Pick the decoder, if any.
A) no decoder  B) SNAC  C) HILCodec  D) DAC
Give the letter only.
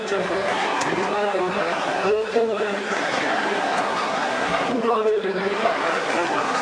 B